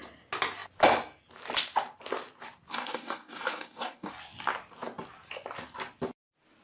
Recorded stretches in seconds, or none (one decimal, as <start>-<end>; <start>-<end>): 0.0-2.7; 4.1-6.6